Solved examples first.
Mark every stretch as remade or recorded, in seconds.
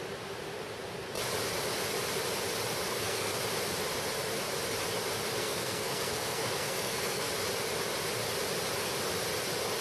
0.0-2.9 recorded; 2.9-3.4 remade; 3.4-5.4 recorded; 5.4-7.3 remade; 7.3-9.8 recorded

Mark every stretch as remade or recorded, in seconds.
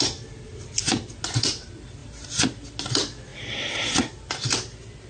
0.0-5.1 recorded